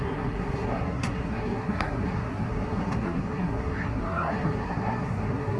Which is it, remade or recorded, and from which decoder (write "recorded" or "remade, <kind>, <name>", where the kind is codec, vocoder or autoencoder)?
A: remade, codec, SNAC